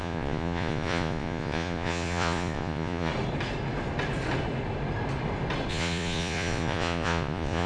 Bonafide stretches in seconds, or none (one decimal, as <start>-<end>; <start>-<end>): 3.1-5.7